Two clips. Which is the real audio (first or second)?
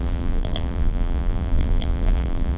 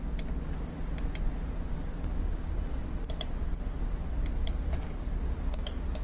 second